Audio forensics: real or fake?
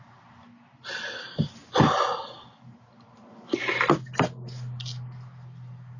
real